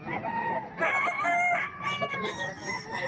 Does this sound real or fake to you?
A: real